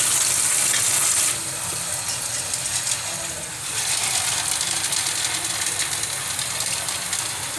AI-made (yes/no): no